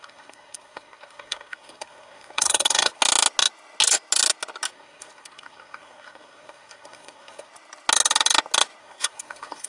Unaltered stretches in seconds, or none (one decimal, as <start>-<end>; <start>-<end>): 3.0-4.7; 7.5-8.8